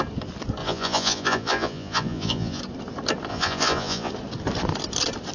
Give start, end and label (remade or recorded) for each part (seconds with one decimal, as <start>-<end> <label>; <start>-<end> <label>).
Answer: 0.0-0.6 recorded; 0.6-2.6 remade; 2.6-3.3 recorded; 3.3-4.1 remade; 4.1-5.3 recorded